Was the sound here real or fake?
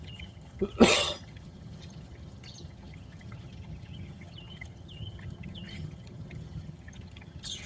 fake